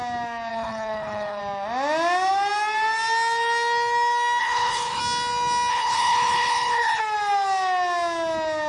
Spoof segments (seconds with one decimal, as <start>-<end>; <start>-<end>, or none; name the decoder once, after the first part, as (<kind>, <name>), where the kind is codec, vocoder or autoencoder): 0.5-1.4 (codec, HILCodec); 4.4-5.0; 5.7-7.0